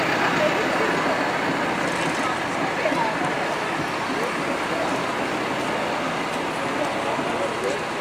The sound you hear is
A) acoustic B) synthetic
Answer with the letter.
A